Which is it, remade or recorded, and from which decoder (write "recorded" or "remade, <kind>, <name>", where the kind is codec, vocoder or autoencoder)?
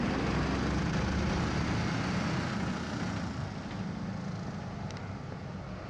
recorded